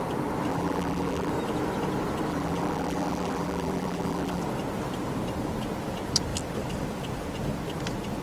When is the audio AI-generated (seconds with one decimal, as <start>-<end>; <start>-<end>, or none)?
0.5-1.3; 2.3-4.4